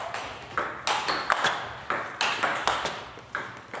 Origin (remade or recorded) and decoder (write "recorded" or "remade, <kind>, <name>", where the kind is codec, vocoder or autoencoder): recorded